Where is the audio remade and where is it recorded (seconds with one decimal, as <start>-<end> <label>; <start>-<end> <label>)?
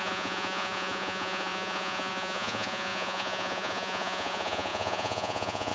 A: 0.0-5.7 remade